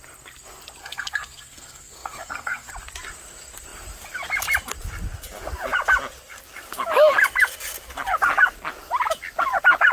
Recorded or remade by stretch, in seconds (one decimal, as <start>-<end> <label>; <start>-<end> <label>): 0.0-0.8 recorded; 0.8-2.7 remade; 2.7-9.9 recorded